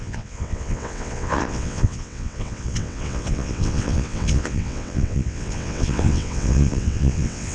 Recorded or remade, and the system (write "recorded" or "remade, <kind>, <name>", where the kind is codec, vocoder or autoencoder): remade, vocoder, WaveNeXt